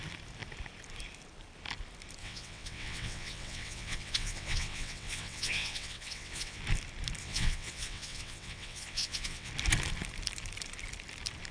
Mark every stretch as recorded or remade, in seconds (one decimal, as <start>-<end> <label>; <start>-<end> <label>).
0.0-2.2 recorded; 2.2-6.6 remade; 6.6-7.2 recorded; 7.2-9.5 remade; 9.5-11.5 recorded